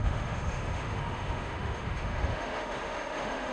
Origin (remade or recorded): remade